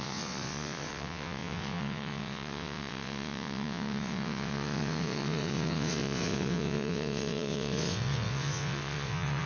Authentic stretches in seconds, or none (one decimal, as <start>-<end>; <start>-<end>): none